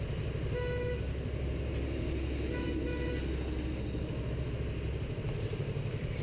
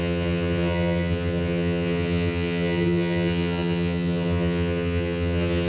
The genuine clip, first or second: first